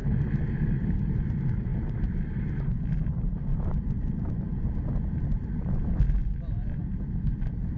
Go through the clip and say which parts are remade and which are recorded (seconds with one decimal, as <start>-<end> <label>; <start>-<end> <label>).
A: 0.0-1.0 remade; 1.0-1.7 recorded; 1.7-2.3 remade; 2.3-3.5 recorded; 3.5-6.0 remade; 6.0-7.8 recorded